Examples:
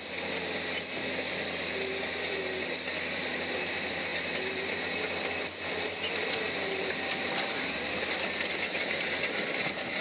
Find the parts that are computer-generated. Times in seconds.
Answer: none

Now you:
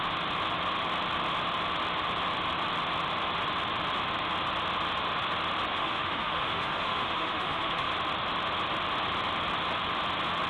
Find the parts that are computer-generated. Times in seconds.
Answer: 5.7-7.9 (autoencoder, DAC-VAE)

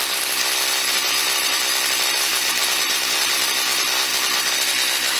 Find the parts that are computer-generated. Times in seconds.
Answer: 2.3-3.3 (vocoder, BigVGAN v2)

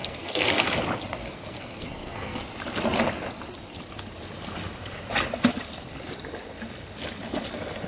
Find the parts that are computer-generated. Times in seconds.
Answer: 0.0-0.7 (codec, SNAC); 1.2-2.4

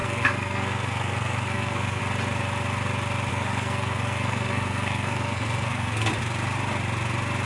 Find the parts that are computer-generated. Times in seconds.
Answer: 0.0-2.0 (codec, SNAC); 3.3-6.1